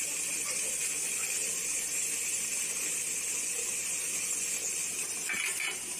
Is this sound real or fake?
real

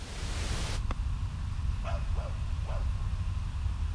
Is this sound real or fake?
real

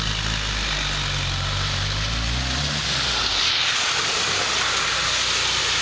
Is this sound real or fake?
real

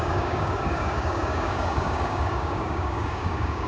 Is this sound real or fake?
fake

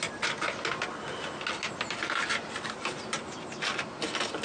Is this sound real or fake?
real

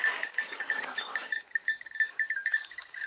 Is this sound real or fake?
fake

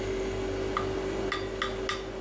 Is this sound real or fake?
real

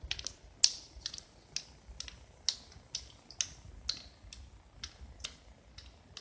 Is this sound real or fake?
real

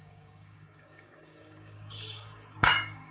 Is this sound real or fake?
fake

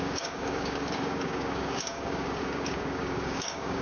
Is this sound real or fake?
fake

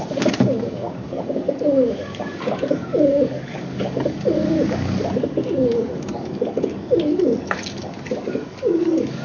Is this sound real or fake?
fake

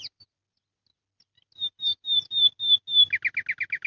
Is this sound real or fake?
real